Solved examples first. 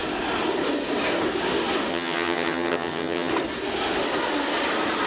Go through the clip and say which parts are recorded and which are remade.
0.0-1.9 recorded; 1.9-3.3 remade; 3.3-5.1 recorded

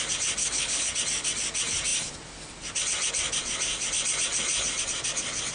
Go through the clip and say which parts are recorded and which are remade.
0.0-0.4 recorded; 0.4-0.9 remade; 0.9-5.5 recorded

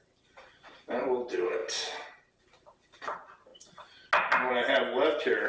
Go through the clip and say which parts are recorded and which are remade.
0.0-5.5 recorded

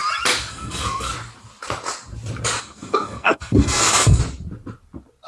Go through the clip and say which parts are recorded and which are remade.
0.0-0.5 recorded; 0.5-1.1 remade; 1.1-2.6 recorded; 2.6-4.2 remade; 4.2-5.3 recorded

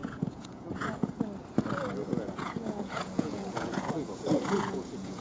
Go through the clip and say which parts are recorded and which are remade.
0.0-1.1 remade; 1.1-2.0 recorded; 2.0-5.2 remade

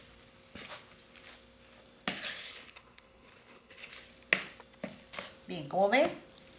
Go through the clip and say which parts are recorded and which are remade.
0.0-2.4 recorded; 2.4-3.9 remade; 3.9-6.6 recorded

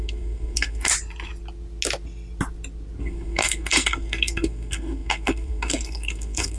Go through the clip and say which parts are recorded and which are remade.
0.0-0.9 remade; 0.9-3.0 recorded; 3.0-6.6 remade

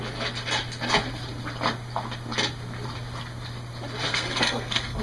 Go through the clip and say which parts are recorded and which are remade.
0.0-4.1 recorded; 4.1-5.0 remade